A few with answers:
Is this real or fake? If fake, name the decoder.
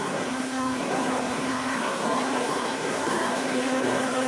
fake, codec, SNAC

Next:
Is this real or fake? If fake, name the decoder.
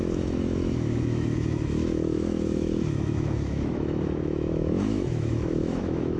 fake, autoencoder, DAC-VAE